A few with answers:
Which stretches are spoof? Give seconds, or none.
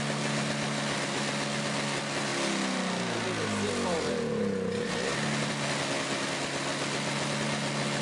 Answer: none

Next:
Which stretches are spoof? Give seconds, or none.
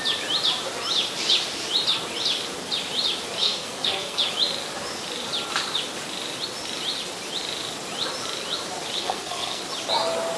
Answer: 3.4-4.2 (codec, SNAC); 9.0-9.6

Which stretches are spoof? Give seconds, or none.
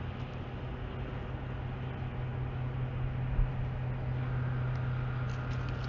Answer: none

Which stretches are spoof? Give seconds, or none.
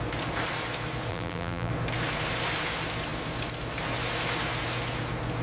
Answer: 1.1-1.7 (vocoder, BigVGAN v2)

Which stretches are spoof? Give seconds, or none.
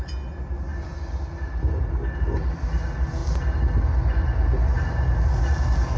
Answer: none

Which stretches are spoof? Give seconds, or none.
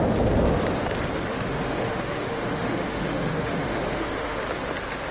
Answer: 1.3-4.4 (autoencoder, DAC-VAE)